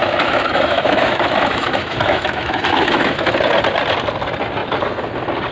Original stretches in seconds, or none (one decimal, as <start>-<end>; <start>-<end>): 3.3-5.5